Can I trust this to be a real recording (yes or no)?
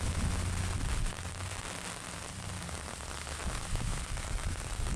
yes